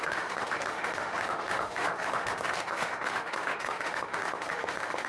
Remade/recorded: remade